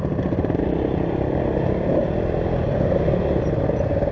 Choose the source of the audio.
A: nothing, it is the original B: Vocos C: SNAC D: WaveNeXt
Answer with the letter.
A